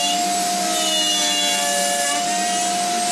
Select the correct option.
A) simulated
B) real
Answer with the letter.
B